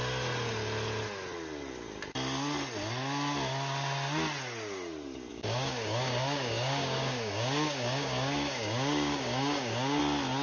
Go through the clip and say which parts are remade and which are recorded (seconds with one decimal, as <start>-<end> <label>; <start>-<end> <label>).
0.0-5.3 recorded; 5.3-10.0 remade; 10.0-10.4 recorded